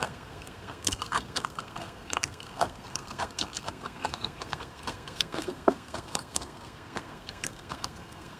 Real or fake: fake